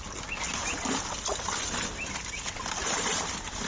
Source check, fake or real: real